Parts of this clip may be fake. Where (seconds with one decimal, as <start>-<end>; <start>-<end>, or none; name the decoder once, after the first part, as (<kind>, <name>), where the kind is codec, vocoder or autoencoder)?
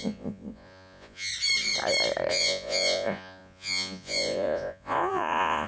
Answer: 0.0-1.3 (vocoder, Vocos); 2.3-5.7